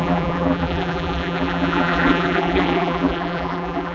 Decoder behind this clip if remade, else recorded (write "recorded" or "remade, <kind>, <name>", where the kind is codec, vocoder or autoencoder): remade, vocoder, BigVGAN v2